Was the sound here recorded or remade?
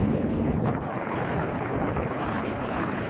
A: remade